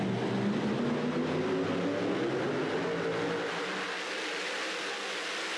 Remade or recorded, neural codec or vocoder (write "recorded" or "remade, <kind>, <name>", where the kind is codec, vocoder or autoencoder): recorded